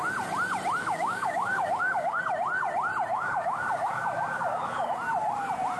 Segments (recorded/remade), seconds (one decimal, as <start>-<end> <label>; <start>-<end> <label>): 0.0-0.8 recorded; 0.8-2.2 remade; 2.2-3.1 recorded; 3.1-4.9 remade; 4.9-5.8 recorded